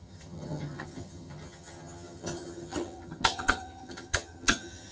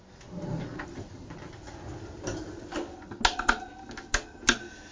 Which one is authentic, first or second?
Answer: second